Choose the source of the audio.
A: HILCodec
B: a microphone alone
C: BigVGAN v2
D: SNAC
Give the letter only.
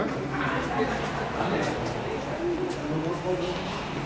C